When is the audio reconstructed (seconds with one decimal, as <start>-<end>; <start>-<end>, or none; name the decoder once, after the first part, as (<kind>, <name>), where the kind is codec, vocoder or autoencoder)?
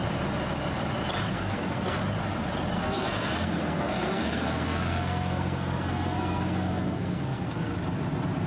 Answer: 1.3-2.0 (codec, SNAC); 2.7-7.7